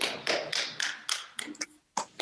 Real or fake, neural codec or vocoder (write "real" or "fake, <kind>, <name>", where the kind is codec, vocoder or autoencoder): real